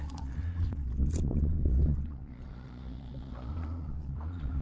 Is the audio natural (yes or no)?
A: no